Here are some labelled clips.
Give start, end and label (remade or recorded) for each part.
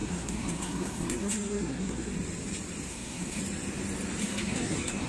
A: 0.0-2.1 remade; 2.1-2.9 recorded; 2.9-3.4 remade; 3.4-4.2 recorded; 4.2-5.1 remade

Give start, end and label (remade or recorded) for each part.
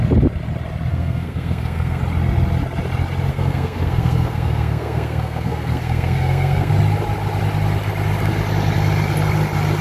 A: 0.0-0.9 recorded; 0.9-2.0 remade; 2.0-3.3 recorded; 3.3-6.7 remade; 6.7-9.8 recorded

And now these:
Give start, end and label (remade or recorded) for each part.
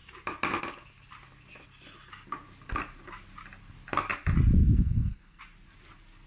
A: 0.0-4.6 recorded; 4.6-5.4 remade; 5.4-6.3 recorded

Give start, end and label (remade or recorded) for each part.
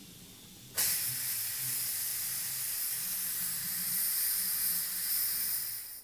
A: 0.0-6.0 recorded